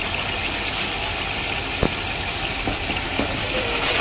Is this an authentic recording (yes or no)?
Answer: yes